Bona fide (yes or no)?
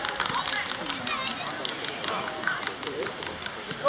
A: yes